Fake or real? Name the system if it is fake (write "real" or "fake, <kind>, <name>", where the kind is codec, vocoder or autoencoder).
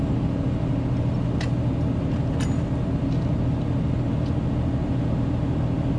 real